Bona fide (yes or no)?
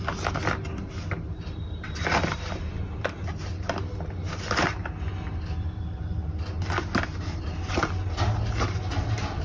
yes